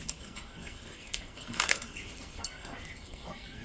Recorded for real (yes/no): no